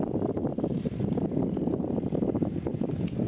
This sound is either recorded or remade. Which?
recorded